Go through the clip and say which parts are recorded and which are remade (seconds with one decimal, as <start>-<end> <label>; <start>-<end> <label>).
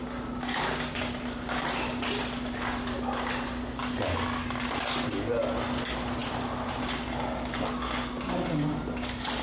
0.0-9.4 recorded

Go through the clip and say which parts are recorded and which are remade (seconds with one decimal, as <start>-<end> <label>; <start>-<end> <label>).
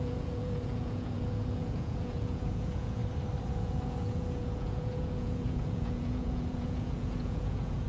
0.0-3.0 remade; 3.0-3.5 recorded; 3.5-7.9 remade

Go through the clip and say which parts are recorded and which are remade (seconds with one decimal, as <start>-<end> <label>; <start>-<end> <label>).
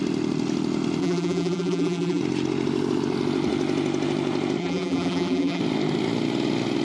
0.0-1.0 recorded; 1.0-2.2 remade; 2.2-4.6 recorded; 4.6-5.6 remade; 5.6-6.8 recorded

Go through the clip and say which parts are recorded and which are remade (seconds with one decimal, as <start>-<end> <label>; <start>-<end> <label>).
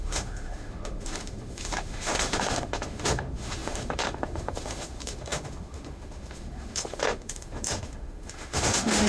0.0-9.1 remade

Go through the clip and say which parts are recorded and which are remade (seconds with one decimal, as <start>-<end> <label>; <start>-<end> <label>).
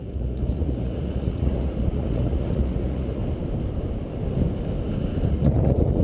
0.0-3.2 remade; 3.2-5.3 recorded; 5.3-6.0 remade